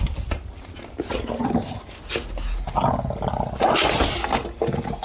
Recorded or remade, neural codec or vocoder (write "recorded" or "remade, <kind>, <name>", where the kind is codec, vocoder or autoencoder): recorded